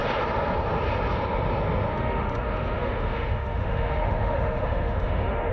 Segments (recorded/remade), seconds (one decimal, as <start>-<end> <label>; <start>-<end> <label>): 0.0-1.9 recorded; 1.9-5.5 remade